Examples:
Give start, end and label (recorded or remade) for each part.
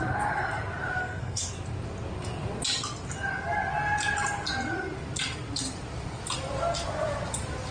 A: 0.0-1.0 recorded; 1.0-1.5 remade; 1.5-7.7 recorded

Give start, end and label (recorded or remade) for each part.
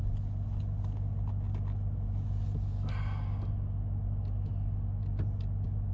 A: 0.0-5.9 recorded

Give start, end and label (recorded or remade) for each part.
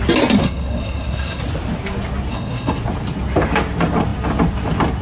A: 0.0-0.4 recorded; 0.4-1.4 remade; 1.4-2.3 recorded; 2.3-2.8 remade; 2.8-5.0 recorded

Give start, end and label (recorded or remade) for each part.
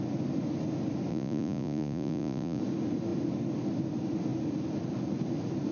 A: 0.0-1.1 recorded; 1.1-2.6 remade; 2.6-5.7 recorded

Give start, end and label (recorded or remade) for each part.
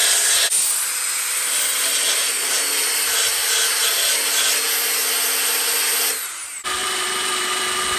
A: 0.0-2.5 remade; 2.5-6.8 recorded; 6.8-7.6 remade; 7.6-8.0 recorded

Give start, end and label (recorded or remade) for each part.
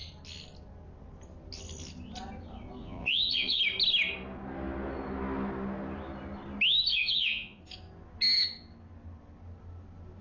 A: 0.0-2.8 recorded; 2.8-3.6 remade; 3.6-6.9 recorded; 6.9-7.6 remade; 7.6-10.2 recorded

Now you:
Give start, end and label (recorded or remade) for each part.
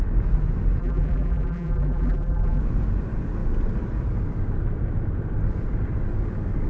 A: 0.0-0.8 recorded; 0.8-2.6 remade; 2.6-6.7 recorded